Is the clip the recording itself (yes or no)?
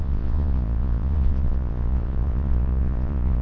no